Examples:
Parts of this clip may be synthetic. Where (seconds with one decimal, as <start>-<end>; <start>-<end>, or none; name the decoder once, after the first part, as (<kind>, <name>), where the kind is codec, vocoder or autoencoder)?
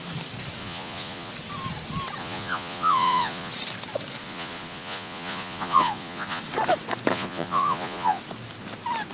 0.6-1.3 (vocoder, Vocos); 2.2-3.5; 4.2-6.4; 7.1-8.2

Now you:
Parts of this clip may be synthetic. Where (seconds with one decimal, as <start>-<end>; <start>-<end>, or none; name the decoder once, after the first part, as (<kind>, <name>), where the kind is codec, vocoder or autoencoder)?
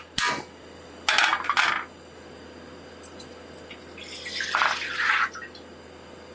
none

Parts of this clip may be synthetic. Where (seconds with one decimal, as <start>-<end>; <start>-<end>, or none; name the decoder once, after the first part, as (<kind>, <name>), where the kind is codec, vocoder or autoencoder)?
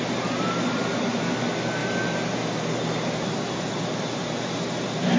none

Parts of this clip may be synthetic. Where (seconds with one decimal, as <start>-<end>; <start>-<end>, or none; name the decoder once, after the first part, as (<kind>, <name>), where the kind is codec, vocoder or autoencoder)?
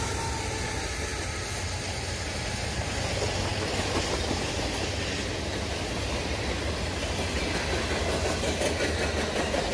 none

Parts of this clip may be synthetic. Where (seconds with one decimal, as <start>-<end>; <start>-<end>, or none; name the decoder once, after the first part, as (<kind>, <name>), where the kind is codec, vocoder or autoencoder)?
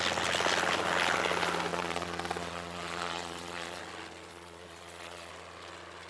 1.7-3.8 (vocoder, Vocos); 4.3-5.3